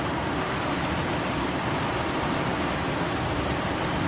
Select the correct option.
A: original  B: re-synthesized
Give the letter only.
A